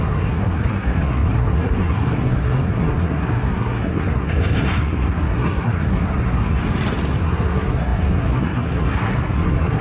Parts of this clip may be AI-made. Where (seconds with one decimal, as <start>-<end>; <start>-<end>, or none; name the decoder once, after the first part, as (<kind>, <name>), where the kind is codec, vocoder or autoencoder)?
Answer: 0.0-6.6 (codec, SNAC); 7.2-9.8